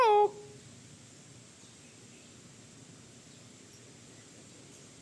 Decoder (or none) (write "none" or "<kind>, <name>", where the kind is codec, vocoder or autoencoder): none